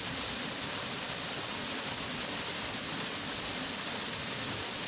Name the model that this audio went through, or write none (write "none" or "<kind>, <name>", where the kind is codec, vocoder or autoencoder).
none